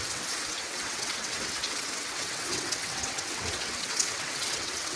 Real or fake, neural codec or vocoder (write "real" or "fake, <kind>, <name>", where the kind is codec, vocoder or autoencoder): fake, vocoder, WaveNeXt